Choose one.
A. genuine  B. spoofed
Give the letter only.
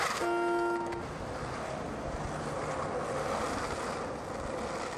A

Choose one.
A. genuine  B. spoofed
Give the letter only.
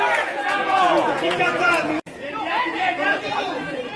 B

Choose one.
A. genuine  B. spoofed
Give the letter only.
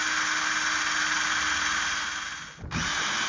A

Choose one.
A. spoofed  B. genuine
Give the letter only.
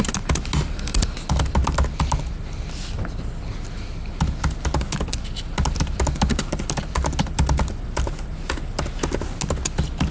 B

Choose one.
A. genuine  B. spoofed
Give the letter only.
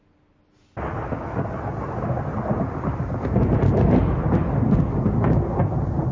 A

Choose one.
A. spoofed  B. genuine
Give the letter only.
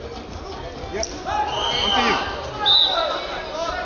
B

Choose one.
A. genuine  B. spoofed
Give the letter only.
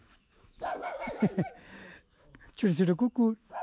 B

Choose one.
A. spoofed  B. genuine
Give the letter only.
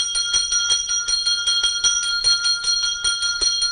B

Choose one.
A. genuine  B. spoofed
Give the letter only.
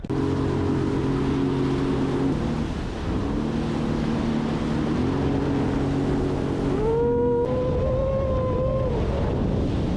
A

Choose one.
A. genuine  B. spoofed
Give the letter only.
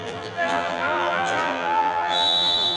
B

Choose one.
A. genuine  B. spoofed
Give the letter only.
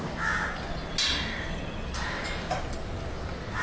A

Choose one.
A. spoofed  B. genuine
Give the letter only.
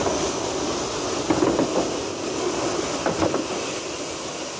B